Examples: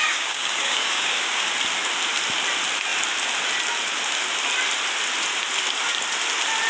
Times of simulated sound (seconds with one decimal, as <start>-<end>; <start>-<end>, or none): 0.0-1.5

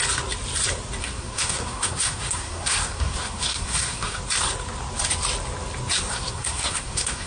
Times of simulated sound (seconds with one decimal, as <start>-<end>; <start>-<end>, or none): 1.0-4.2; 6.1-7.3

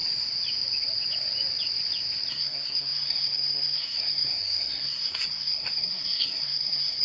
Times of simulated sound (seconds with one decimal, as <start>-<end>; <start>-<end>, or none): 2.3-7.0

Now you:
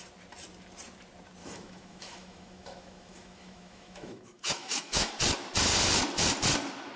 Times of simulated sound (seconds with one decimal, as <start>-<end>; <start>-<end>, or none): 1.4-5.1

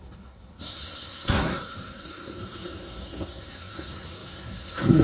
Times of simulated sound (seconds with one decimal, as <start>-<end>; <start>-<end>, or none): 0.0-5.0